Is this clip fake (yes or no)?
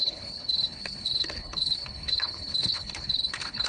yes